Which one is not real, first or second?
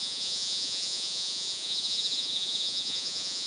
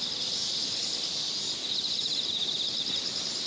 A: first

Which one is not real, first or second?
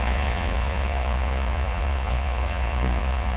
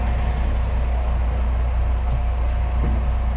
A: first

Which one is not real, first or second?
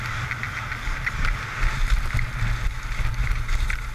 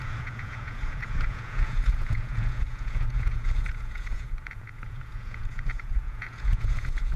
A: second